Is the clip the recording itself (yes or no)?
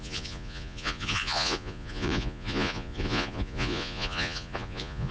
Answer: no